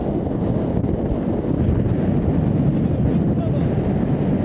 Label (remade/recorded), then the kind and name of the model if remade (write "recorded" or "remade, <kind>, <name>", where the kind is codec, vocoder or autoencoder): recorded